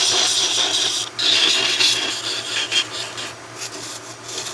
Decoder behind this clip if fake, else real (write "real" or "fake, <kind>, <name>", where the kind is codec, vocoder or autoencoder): real